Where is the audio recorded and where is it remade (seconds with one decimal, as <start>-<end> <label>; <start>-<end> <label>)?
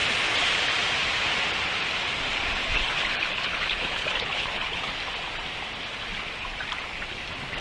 0.0-2.6 recorded; 2.6-4.9 remade; 4.9-7.6 recorded